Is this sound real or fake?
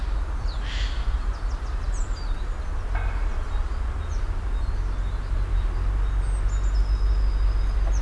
real